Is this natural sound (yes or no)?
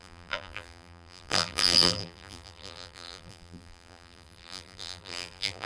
no